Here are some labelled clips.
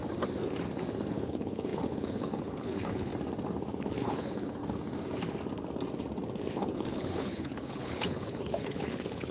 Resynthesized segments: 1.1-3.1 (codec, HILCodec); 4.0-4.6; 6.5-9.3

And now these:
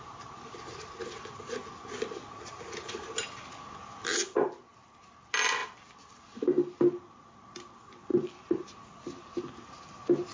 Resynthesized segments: none

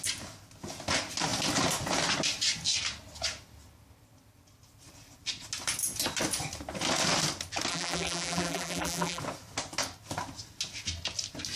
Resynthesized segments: 7.7-9.2 (vocoder, BigVGAN v2)

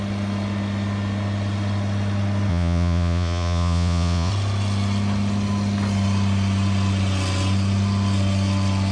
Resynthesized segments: 2.5-4.3 (vocoder, Vocos)

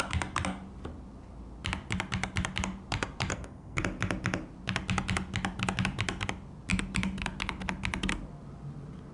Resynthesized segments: 3.3-3.8 (codec, SNAC)